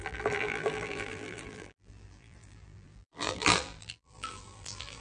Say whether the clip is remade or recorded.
remade